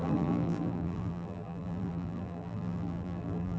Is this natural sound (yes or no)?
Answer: no